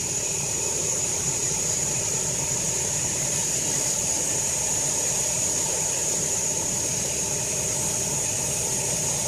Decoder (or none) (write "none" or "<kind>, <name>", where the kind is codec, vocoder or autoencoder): vocoder, BigVGAN v2